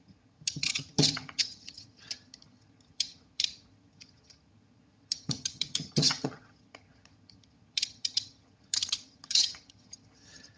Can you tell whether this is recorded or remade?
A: remade